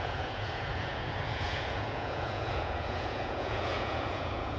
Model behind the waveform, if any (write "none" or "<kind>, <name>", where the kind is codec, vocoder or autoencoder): vocoder, Vocos